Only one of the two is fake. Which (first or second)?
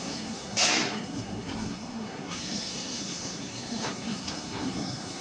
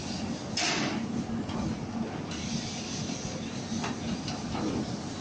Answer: first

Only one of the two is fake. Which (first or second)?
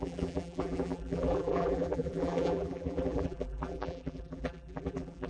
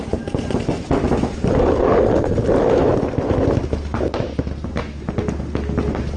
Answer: first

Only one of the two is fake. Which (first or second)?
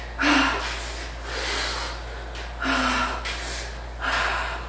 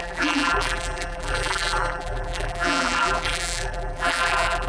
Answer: second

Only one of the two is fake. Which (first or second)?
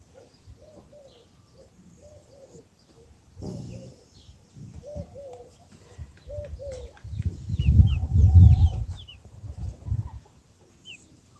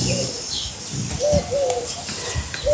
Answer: first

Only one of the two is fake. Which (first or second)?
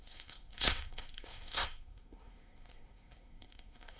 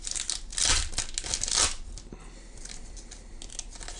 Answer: first